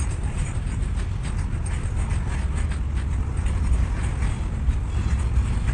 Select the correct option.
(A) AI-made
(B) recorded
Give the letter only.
B